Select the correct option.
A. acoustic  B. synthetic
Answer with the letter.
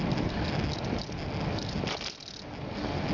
A